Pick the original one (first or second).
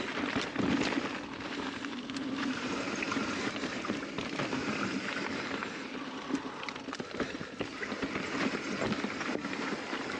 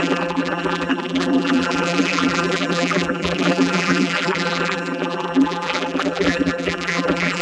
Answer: first